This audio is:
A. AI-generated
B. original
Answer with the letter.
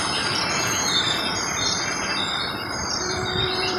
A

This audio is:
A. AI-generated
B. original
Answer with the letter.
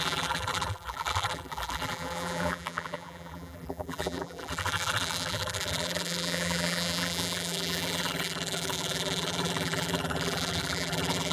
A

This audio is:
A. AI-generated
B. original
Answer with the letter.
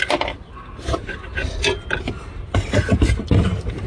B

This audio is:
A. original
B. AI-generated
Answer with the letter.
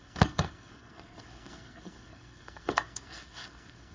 B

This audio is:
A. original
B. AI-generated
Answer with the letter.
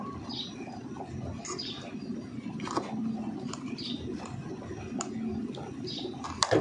A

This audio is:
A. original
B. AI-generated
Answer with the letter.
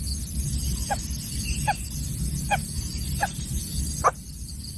A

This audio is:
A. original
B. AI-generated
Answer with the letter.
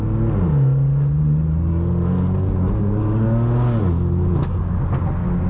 A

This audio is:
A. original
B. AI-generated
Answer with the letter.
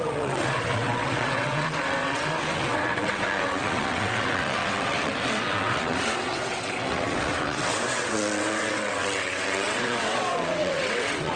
B